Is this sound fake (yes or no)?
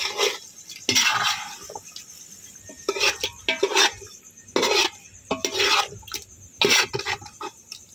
no